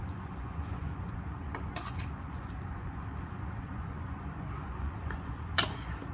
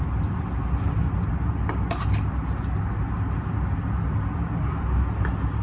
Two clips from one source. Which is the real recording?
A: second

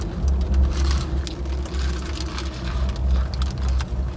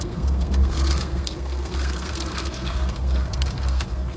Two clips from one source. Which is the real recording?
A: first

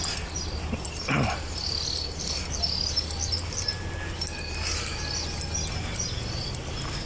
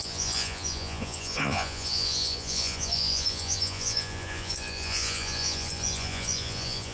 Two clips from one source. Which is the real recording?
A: first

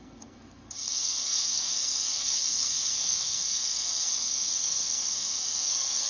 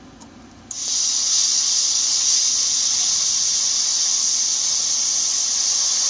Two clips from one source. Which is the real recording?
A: second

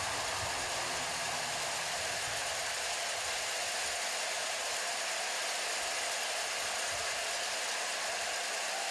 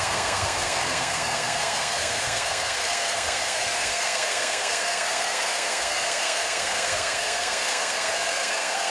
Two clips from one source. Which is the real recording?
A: first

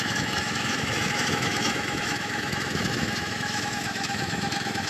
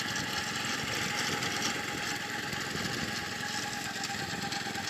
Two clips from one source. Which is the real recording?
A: second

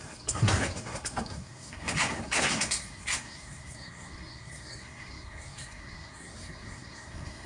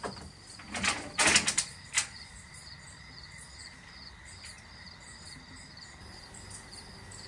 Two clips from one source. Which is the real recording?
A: second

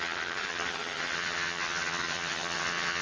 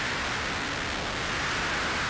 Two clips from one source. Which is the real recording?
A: second